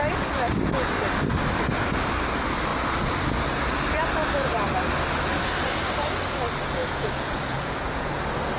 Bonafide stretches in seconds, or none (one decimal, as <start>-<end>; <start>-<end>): 0.0-6.8; 8.2-8.6